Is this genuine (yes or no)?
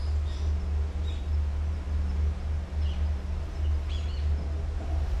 yes